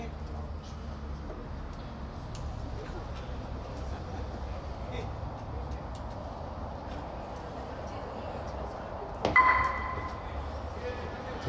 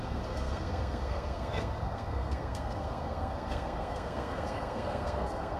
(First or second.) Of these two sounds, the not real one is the second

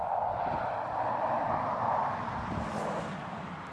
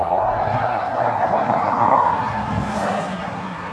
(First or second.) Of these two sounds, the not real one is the second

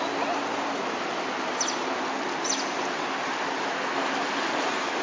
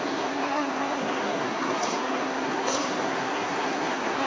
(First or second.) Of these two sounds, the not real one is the second